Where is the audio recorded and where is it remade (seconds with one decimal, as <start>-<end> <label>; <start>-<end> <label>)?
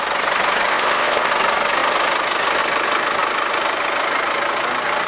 0.0-0.7 recorded; 0.7-1.3 remade; 1.3-5.1 recorded